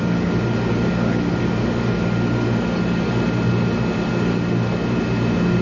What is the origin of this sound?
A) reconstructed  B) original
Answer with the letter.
B